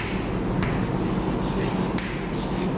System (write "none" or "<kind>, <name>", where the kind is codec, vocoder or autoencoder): none